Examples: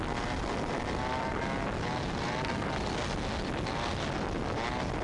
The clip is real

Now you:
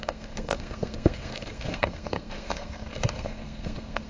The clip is fake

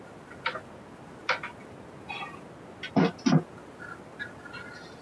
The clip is real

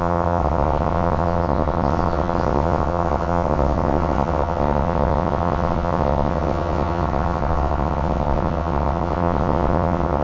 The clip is fake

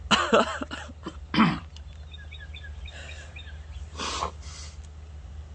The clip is real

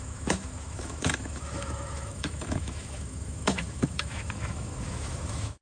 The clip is fake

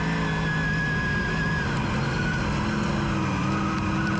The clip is real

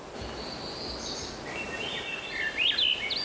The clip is real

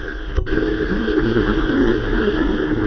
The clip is fake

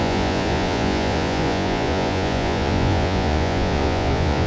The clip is fake